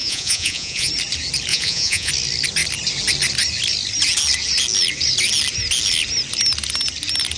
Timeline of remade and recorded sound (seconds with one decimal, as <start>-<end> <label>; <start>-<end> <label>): 0.0-0.9 remade; 0.9-1.5 recorded; 1.5-2.1 remade; 2.1-7.4 recorded